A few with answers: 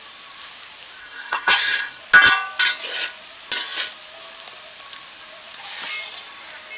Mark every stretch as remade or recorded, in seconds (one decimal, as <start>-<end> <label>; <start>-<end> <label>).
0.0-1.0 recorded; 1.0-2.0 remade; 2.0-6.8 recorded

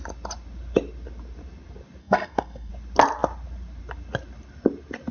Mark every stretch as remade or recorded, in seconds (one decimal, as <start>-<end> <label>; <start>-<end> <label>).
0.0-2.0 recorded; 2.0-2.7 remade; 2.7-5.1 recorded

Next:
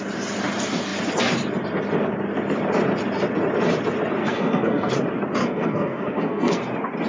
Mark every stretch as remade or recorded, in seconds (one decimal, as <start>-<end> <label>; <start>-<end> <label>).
0.0-4.2 recorded; 4.2-4.9 remade; 4.9-5.4 recorded; 5.4-6.6 remade; 6.6-7.1 recorded

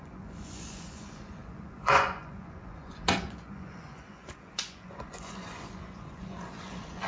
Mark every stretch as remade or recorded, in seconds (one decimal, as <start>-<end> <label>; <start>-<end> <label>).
0.0-7.1 remade

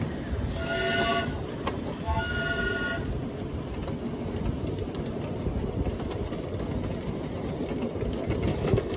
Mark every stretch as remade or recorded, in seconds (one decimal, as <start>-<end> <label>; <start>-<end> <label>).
0.0-1.9 recorded; 1.9-2.4 remade; 2.4-8.5 recorded; 8.5-9.0 remade